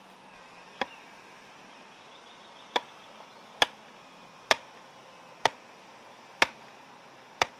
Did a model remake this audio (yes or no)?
yes